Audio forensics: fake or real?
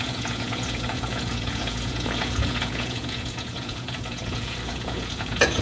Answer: fake